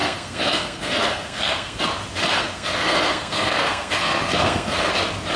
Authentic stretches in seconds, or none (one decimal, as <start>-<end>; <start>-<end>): 1.8-2.2; 4.9-5.4